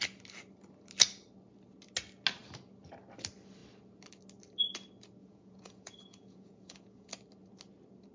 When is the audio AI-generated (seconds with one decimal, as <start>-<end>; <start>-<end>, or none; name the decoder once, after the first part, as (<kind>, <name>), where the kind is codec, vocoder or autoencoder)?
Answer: 5.2-7.1 (vocoder, Vocos)